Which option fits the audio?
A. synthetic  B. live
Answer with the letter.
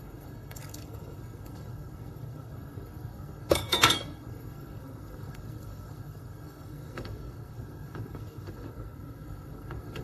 A